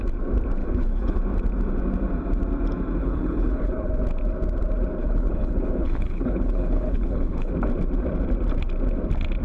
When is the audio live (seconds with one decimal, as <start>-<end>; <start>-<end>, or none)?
0.0-0.6; 1.2-3.0; 3.9-5.0; 7.5-9.4